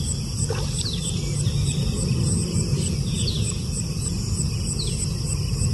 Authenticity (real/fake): real